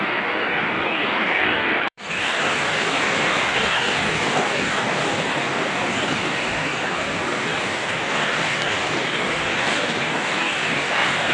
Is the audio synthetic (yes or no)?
yes